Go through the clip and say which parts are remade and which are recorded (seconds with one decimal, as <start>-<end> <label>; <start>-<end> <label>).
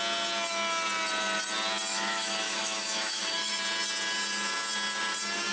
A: 0.0-1.9 recorded; 1.9-3.6 remade; 3.6-5.5 recorded